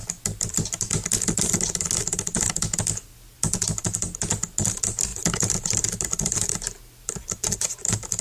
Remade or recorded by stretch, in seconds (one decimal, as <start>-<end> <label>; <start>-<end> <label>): 0.0-8.2 recorded

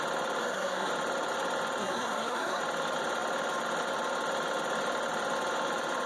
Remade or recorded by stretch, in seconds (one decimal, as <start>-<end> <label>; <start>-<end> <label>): 0.0-0.4 recorded; 0.4-0.9 remade; 0.9-1.8 recorded; 1.8-2.6 remade; 2.6-6.1 recorded

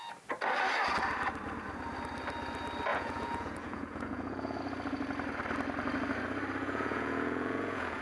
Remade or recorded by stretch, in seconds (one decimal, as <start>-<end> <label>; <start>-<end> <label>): 0.0-2.9 recorded; 2.9-4.6 remade; 4.6-6.6 recorded; 6.6-8.0 remade